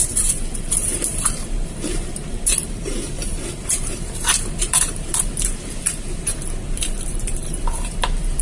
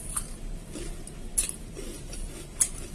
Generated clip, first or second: first